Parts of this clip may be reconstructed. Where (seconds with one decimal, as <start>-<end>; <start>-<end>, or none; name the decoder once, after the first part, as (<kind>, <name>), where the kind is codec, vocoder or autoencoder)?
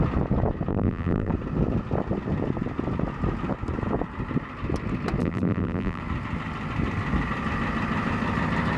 0.7-1.3 (vocoder, BigVGAN v2); 5.2-6.0